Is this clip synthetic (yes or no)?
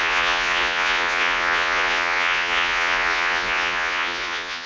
yes